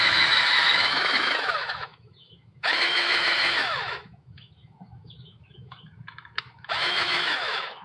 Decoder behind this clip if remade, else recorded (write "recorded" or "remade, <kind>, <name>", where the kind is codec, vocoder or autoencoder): remade, autoencoder, DAC-VAE